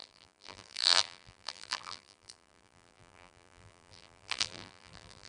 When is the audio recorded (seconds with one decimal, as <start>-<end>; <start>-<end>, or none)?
none